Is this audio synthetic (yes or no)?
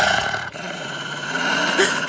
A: yes